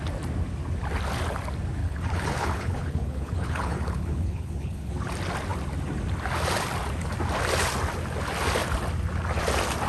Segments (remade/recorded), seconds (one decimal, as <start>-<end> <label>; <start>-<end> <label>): 0.0-1.8 recorded; 1.8-4.9 remade; 4.9-9.9 recorded